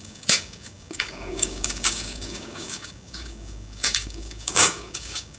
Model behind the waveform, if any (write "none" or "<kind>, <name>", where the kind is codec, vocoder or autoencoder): codec, DAC